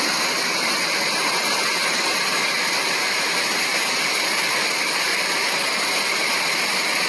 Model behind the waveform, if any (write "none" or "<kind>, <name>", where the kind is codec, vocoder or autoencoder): none